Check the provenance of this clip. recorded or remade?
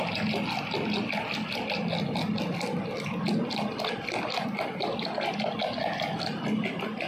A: recorded